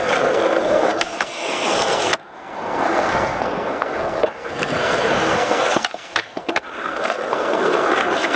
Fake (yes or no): yes